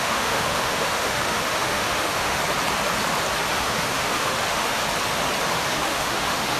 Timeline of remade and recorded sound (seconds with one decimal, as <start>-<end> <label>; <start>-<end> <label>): 0.0-2.4 remade; 2.4-3.5 recorded; 3.5-4.8 remade; 4.8-5.5 recorded; 5.5-6.6 remade